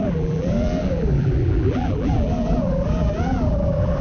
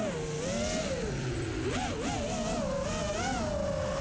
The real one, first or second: second